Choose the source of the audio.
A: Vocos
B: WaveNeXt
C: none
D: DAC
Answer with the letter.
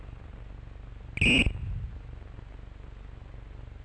C